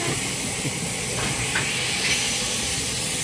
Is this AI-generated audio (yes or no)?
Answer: no